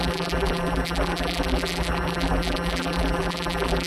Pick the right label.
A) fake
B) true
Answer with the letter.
A